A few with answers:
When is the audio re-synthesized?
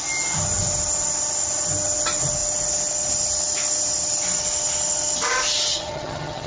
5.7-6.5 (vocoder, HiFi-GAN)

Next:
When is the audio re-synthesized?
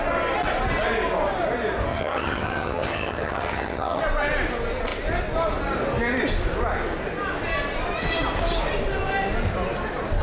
1.9-4.0 (vocoder, HiFi-GAN)